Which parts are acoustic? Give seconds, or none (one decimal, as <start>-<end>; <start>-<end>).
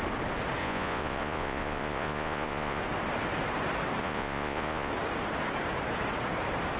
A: 0.0-0.6; 2.8-4.0; 4.9-6.8